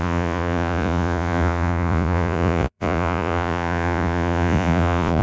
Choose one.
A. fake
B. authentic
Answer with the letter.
A